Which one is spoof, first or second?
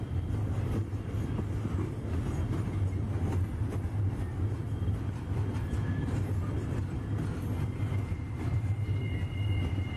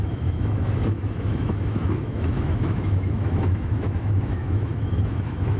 second